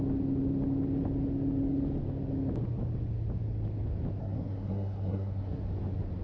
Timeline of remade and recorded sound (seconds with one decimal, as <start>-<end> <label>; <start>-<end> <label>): 0.0-4.2 recorded; 4.2-5.6 remade; 5.6-6.2 recorded